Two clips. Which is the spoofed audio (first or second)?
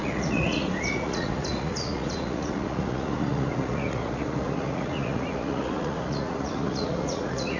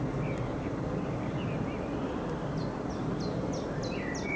first